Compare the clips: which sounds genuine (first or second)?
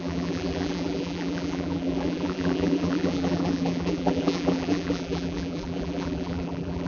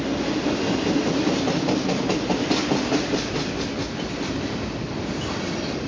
second